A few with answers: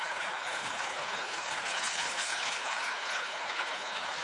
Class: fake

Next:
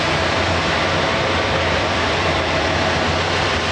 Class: fake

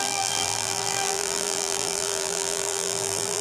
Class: fake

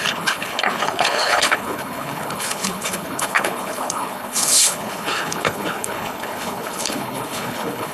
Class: fake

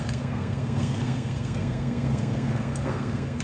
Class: fake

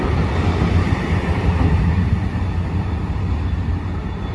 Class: real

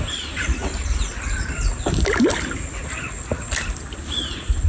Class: real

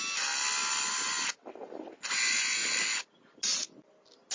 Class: real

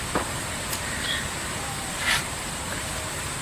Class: fake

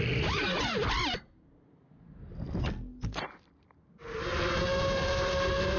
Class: real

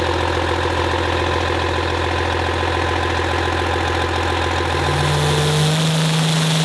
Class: real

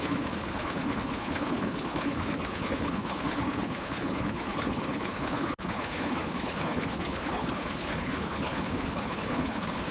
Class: fake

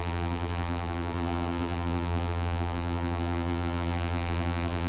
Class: fake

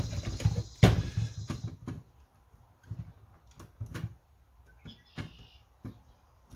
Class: real